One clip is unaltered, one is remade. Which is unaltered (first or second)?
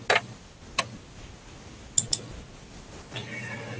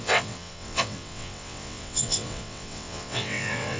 first